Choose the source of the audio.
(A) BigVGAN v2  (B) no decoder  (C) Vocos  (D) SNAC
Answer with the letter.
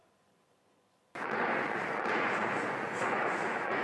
C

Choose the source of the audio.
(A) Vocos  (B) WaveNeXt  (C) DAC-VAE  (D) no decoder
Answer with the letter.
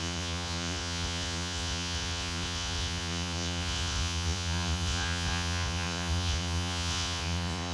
A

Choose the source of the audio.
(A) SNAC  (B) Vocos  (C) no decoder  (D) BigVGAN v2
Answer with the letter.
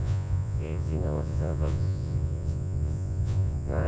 B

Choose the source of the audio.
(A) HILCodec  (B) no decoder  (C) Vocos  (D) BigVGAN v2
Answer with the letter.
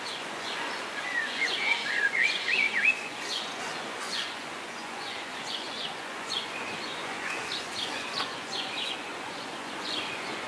C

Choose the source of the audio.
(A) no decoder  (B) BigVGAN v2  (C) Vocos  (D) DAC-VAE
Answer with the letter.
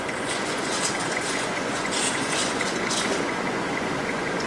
C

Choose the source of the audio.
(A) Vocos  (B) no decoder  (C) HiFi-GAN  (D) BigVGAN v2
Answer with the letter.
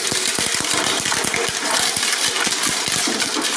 B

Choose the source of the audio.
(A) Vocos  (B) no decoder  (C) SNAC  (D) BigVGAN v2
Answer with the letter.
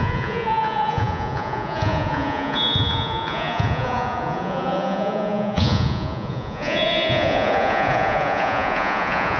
A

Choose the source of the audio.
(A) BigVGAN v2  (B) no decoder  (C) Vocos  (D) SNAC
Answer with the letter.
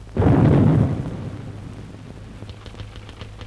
B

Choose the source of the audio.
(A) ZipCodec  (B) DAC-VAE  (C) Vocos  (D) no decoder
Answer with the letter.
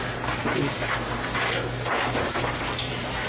D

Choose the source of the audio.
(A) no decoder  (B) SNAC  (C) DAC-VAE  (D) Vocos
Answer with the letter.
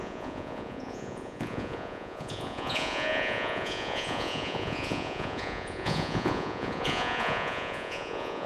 D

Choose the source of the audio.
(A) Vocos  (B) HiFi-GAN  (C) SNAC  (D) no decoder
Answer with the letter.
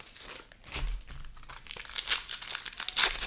D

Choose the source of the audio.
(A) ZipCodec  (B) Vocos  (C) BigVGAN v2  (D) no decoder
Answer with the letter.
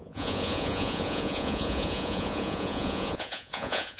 B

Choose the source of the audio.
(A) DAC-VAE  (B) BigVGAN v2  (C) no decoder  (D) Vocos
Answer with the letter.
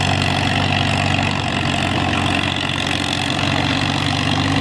C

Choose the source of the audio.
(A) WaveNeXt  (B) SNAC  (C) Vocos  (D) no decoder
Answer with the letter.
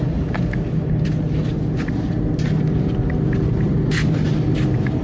D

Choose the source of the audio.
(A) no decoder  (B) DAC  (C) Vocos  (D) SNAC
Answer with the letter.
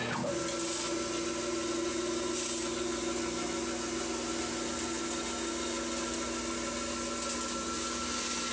A